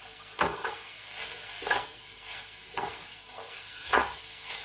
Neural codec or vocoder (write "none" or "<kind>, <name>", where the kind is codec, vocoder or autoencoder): codec, SNAC